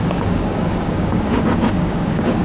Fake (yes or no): yes